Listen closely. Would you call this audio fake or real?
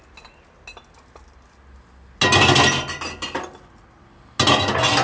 real